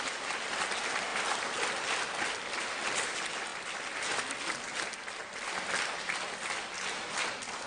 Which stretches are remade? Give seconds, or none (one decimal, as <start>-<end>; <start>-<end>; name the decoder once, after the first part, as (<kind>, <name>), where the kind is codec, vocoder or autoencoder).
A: none